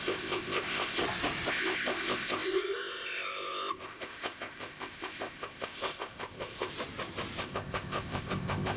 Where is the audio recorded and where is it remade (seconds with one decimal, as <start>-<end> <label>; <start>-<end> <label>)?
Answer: 0.0-1.0 remade; 1.0-1.5 recorded; 1.5-6.7 remade; 6.7-7.4 recorded; 7.4-8.8 remade